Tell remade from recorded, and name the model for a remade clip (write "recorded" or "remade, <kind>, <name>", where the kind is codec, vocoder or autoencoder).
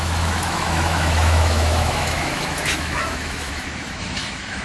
remade, autoencoder, DAC-VAE